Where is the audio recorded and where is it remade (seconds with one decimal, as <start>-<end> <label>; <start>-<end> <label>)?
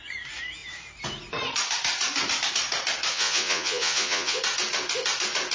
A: 0.0-3.1 recorded; 3.1-4.4 remade; 4.4-5.5 recorded